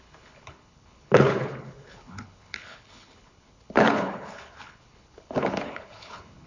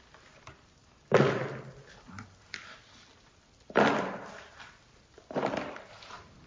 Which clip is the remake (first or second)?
first